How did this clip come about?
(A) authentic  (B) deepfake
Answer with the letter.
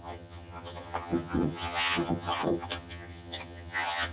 B